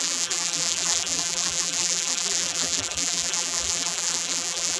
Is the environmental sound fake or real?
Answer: fake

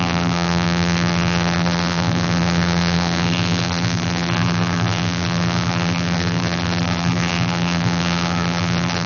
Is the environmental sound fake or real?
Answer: fake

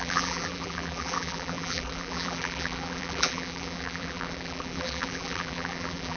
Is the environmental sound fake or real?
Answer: fake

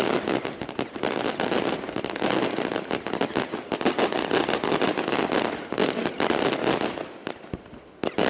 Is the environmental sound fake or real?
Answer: real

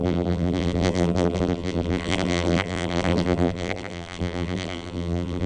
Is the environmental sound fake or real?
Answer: fake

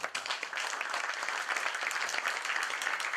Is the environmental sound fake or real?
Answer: real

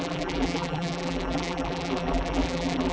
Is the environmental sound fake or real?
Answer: fake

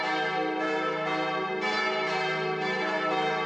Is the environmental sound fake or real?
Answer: real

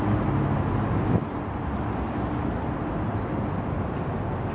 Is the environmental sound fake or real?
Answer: real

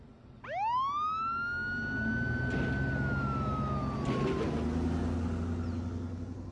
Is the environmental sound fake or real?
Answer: real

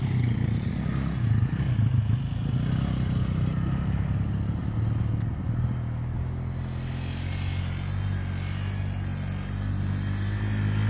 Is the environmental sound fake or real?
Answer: real